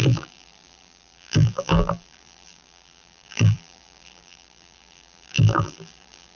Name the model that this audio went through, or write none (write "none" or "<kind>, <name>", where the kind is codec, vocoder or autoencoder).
vocoder, BigVGAN v2